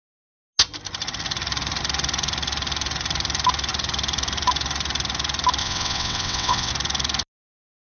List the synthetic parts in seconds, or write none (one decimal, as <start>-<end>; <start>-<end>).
5.6-6.7